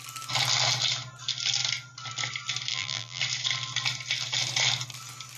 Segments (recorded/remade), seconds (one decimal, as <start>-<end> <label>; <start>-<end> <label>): 0.0-2.7 recorded; 2.7-3.2 remade; 3.2-5.4 recorded